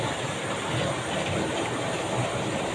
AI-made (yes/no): no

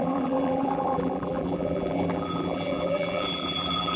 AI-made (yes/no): yes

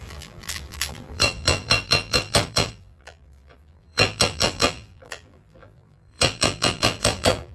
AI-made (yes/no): yes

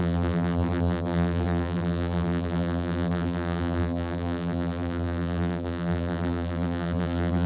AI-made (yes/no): yes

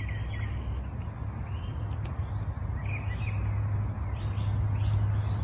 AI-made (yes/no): no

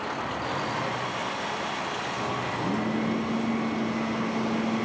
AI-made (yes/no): no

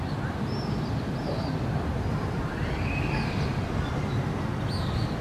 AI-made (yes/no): yes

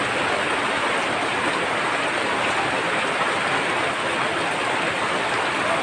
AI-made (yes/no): no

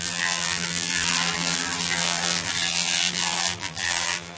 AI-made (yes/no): yes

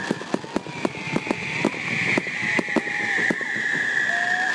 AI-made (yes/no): no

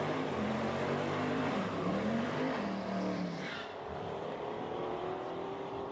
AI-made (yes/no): yes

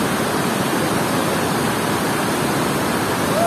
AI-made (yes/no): yes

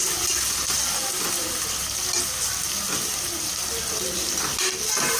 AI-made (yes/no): no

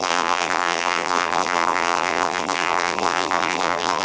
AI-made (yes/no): yes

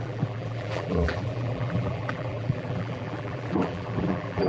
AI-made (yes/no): yes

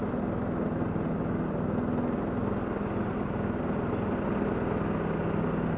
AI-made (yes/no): no